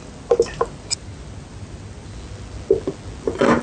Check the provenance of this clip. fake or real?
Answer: real